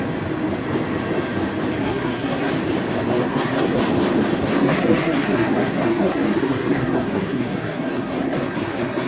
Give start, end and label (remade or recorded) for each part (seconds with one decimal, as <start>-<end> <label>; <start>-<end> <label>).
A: 0.0-1.8 recorded; 1.8-2.5 remade; 2.5-3.2 recorded; 3.2-3.8 remade; 3.8-4.3 recorded; 4.3-9.1 remade